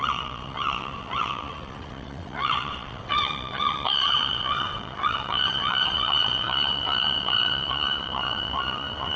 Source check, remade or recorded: remade